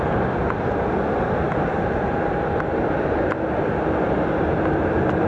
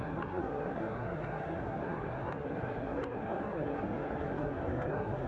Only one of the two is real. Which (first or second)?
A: first